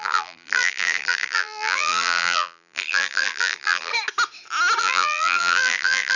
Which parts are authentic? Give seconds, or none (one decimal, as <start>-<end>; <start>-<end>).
3.9-4.8